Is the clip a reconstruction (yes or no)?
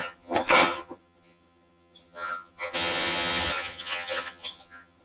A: yes